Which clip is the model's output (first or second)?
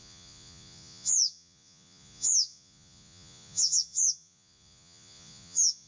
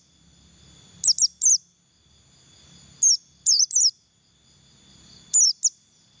first